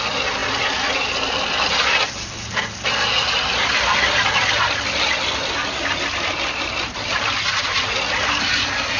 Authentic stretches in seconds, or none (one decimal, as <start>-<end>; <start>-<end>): 0.0-9.0